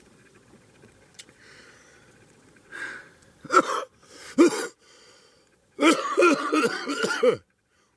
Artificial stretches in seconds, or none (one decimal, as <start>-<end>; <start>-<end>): 0.0-3.0; 4.5-8.0